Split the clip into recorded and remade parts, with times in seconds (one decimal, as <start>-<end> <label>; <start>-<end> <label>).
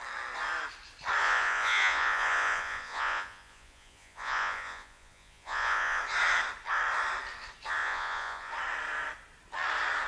0.0-1.2 recorded; 1.2-6.0 remade; 6.0-7.8 recorded; 7.8-8.5 remade; 8.5-10.1 recorded